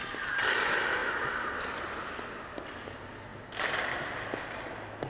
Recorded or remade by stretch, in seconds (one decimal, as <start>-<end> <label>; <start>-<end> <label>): 0.0-5.1 recorded